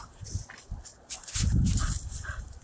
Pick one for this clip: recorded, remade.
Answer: recorded